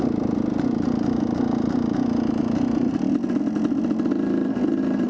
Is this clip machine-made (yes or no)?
no